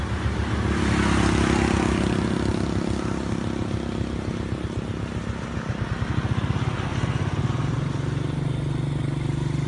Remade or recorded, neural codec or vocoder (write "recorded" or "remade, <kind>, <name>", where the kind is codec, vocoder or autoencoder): recorded